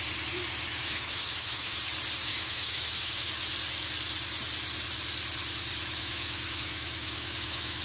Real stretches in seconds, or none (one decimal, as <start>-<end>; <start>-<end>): 0.0-0.8; 1.8-2.3; 3.3-5.8